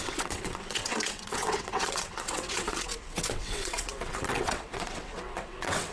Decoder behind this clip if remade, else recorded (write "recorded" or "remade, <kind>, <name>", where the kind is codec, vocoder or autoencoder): remade, vocoder, WaveNeXt